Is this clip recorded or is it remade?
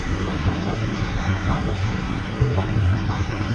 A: remade